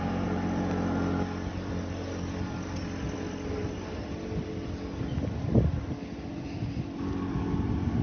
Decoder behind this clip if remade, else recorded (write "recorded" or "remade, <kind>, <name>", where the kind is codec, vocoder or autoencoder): recorded